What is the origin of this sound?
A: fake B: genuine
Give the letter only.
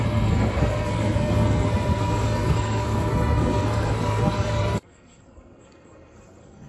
A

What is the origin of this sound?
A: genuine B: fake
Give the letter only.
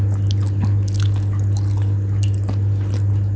A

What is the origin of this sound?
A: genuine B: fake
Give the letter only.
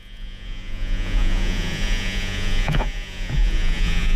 B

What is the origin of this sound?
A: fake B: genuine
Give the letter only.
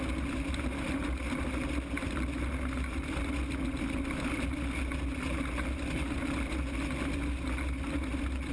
B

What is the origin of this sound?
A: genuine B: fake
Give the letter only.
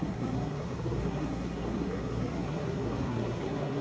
B